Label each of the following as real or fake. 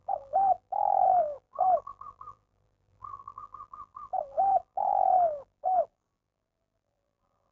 fake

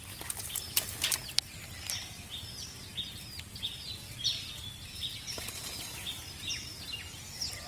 real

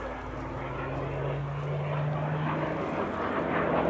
real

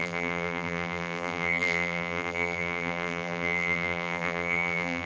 fake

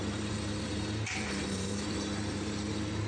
fake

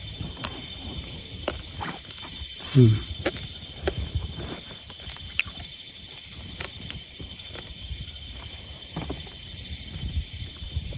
fake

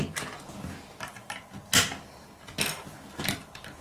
real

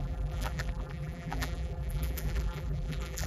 fake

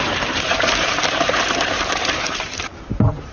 fake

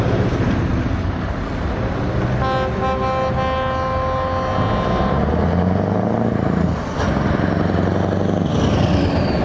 real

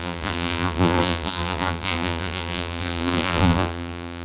fake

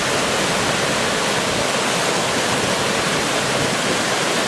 real